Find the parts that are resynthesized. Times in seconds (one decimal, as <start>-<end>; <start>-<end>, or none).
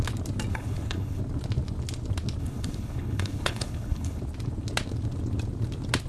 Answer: 0.5-1.2; 2.4-4.2